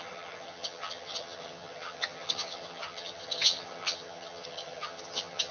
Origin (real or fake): fake